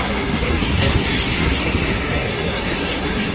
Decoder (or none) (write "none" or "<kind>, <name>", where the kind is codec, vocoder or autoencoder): codec, SNAC